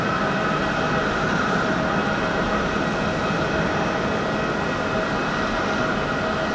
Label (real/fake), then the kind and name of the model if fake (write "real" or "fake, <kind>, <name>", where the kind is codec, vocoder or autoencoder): real